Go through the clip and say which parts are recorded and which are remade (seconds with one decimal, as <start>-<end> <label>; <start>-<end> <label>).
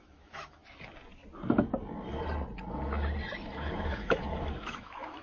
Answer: 0.0-0.6 remade; 0.6-3.7 recorded; 3.7-5.2 remade